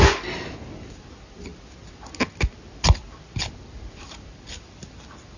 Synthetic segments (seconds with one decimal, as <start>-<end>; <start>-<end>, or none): none